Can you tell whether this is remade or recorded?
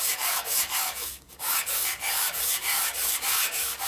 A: remade